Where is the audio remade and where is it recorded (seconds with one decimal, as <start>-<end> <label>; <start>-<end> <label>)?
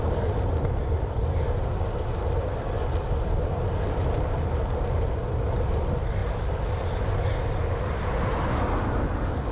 0.0-9.5 recorded